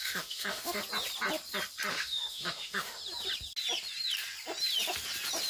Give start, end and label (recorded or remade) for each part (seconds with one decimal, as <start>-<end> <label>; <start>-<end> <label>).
0.0-0.8 remade; 0.8-1.9 recorded; 1.9-3.0 remade; 3.0-5.5 recorded